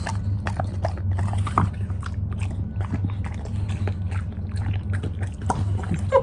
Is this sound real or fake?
real